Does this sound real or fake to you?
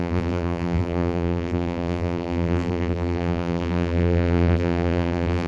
fake